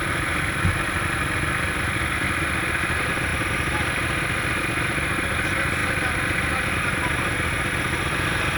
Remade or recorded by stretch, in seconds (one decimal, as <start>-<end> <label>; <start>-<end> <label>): 0.0-8.6 recorded